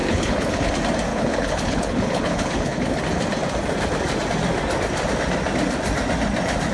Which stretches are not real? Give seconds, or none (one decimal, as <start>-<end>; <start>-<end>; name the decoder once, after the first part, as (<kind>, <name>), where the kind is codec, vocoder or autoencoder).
0.0-0.7 (codec, HILCodec); 1.1-3.0